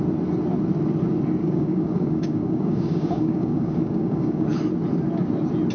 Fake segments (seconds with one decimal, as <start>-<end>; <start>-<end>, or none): 1.4-4.6